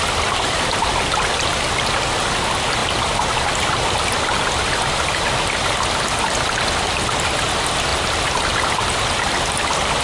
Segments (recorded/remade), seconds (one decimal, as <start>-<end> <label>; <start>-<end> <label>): 0.0-10.0 recorded